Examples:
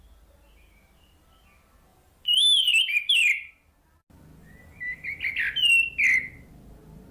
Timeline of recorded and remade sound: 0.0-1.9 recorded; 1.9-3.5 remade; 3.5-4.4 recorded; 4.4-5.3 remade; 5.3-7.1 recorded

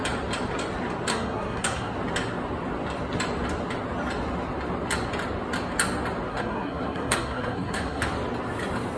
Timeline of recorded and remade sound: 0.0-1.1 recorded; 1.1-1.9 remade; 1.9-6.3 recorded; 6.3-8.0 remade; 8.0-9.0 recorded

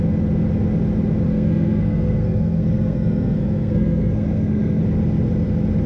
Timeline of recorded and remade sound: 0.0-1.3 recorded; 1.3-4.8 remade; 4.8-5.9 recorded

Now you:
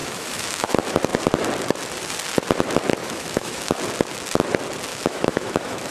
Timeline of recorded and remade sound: 0.0-0.7 remade; 0.7-3.0 recorded; 3.0-3.8 remade; 3.8-4.9 recorded; 4.9-5.9 remade